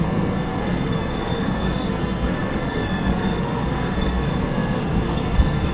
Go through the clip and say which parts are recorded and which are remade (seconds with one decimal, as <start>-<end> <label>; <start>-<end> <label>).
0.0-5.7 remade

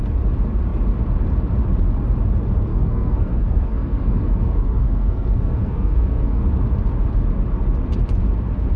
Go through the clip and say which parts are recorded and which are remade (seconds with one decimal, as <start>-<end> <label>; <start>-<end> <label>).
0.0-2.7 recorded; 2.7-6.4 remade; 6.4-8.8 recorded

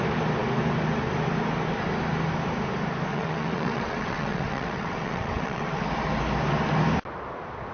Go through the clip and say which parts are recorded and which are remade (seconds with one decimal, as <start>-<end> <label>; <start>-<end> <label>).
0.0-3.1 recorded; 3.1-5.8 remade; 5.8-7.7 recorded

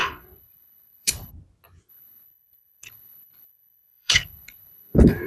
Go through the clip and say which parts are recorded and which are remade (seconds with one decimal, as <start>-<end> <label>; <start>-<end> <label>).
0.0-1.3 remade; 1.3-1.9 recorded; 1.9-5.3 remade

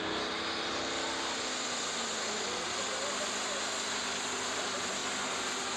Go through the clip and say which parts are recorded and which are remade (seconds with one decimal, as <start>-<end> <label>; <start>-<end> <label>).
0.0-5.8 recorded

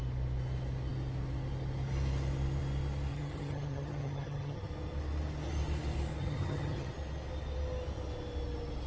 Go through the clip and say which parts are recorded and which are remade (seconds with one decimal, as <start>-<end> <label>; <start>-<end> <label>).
0.0-3.1 recorded; 3.1-4.7 remade; 4.7-6.2 recorded; 6.2-6.9 remade; 6.9-8.9 recorded